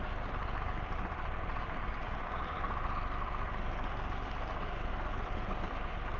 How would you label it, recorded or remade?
recorded